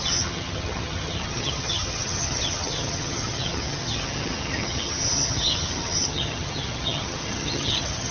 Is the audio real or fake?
fake